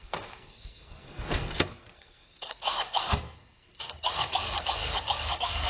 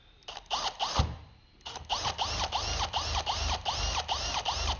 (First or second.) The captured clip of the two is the second